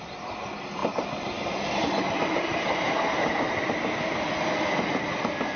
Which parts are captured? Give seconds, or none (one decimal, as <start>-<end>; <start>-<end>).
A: 0.0-5.6